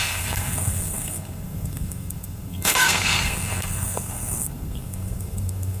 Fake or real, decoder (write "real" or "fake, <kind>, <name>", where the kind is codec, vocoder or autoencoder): fake, codec, SNAC